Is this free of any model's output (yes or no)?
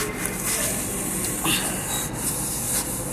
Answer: yes